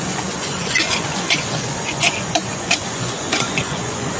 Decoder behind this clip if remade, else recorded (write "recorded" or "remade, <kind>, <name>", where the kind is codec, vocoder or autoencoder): remade, vocoder, Vocos